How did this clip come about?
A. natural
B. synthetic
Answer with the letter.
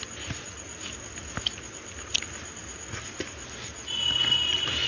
A